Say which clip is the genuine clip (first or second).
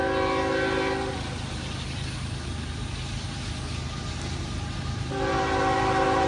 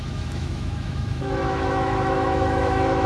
first